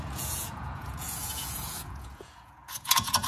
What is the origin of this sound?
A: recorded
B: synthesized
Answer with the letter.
B